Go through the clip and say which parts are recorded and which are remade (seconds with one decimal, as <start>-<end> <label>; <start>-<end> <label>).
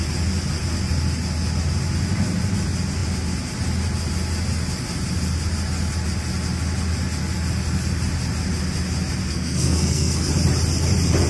0.0-9.2 recorded; 9.2-10.3 remade; 10.3-11.3 recorded